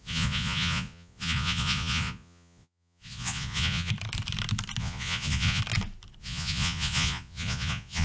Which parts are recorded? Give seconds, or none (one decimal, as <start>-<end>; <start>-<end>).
3.9-4.8; 5.6-6.2